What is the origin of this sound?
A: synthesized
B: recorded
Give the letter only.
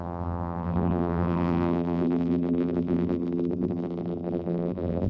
A